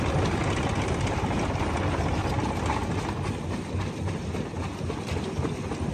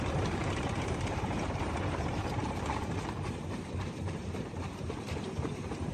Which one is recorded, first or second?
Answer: first